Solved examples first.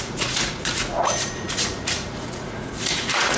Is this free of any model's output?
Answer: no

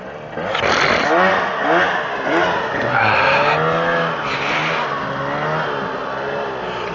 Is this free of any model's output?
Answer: yes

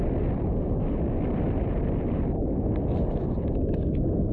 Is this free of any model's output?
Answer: yes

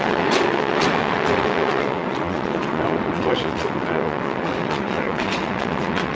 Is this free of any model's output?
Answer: no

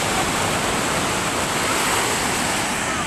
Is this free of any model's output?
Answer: yes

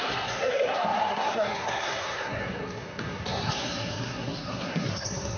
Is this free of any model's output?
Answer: no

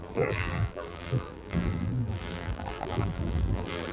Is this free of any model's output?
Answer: no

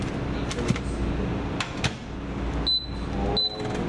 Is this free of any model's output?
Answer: yes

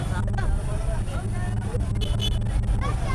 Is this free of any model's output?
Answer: yes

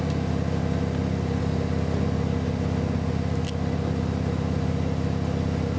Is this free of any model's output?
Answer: yes